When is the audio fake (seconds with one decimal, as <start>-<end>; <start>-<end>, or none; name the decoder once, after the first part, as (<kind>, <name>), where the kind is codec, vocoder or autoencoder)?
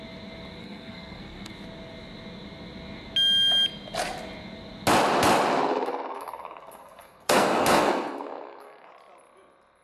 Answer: 0.6-1.5 (codec, SNAC); 5.7-8.9